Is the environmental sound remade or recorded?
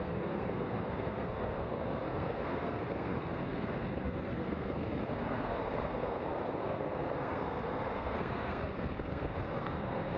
remade